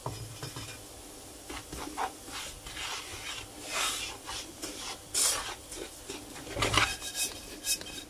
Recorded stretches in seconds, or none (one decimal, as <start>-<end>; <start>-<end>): 0.0-8.1